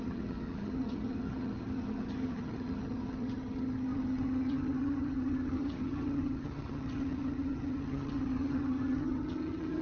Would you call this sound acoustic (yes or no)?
no